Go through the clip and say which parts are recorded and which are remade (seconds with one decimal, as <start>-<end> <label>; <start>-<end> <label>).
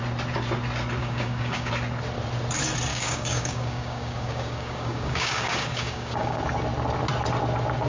0.0-1.0 recorded; 1.0-1.7 remade; 1.7-2.9 recorded; 2.9-6.4 remade; 6.4-7.9 recorded